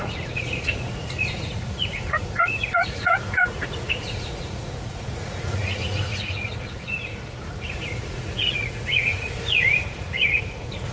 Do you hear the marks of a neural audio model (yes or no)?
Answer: yes